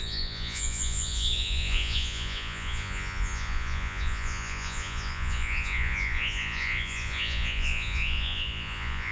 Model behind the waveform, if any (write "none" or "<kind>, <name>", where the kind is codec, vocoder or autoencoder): vocoder, Vocos